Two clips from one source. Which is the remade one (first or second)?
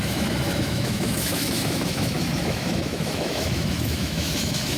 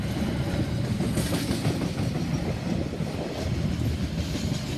first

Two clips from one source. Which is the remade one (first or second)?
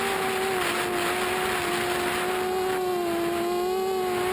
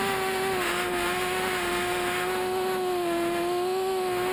second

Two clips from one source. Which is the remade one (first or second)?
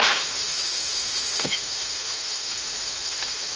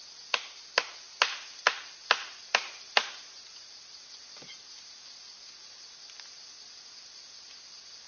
first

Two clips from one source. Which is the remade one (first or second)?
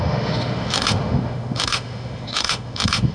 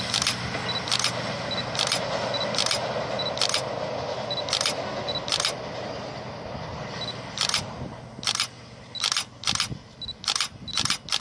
first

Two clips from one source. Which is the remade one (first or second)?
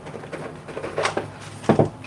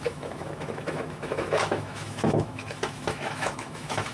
second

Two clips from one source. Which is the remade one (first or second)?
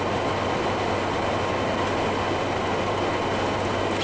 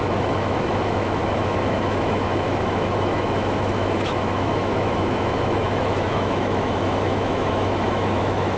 second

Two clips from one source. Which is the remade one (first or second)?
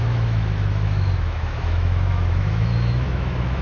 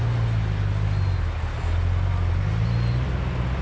first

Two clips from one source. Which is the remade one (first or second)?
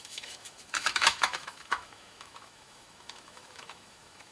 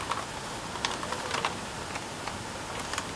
first